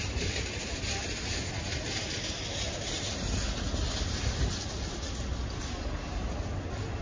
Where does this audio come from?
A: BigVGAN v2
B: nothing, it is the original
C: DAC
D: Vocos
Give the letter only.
B